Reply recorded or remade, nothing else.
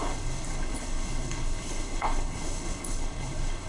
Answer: remade